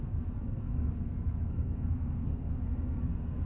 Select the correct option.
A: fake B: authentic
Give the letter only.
A